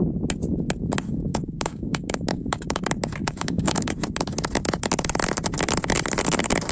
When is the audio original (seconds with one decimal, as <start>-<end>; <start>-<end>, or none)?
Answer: 0.0-1.3; 2.8-3.2; 3.9-6.7